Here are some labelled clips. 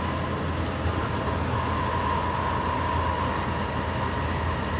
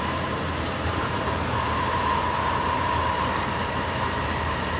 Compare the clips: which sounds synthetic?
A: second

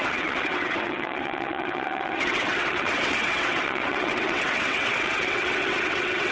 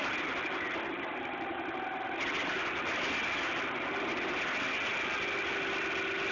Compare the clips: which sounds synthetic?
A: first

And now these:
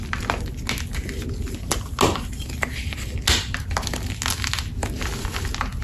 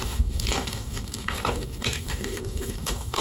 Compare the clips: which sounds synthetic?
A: second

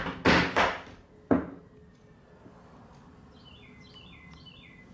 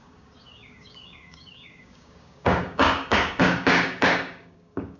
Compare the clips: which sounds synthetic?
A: second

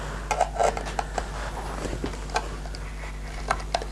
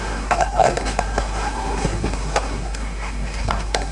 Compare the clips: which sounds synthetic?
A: second